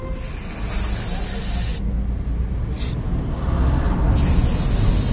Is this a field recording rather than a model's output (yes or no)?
yes